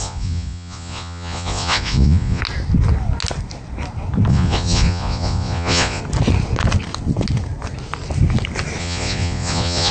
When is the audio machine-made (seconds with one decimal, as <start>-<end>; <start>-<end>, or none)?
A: 0.0-2.4; 4.3-6.0; 8.8-9.9